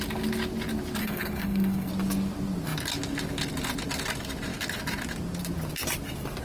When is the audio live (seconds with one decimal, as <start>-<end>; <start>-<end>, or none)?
0.0-1.0; 1.9-6.4